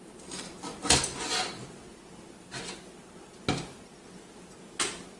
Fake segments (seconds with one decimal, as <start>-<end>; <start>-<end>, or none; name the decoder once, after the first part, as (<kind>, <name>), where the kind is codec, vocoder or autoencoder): none